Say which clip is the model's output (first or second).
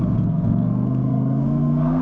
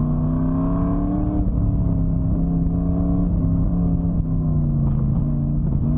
first